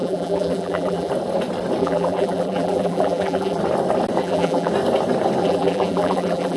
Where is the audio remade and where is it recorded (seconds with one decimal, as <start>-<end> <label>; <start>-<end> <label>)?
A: 0.0-1.1 remade; 1.1-1.8 recorded; 1.8-3.6 remade; 3.6-4.2 recorded; 4.2-4.7 remade; 4.7-5.4 recorded; 5.4-6.6 remade